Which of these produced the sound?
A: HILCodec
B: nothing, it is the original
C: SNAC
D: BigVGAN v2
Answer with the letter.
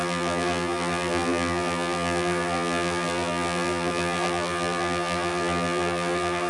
D